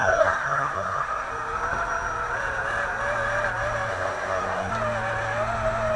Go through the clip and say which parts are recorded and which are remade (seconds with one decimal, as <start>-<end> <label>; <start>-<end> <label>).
0.0-1.3 remade; 1.3-3.9 recorded; 3.9-4.7 remade; 4.7-6.0 recorded